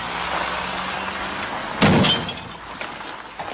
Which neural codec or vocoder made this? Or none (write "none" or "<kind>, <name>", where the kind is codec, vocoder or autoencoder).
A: none